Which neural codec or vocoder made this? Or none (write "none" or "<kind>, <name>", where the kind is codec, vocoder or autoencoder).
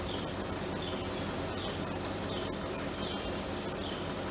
none